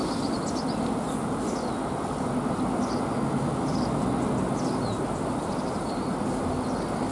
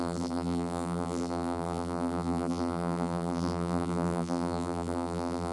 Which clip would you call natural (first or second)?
first